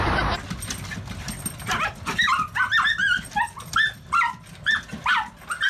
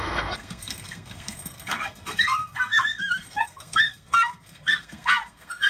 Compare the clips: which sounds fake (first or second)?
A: second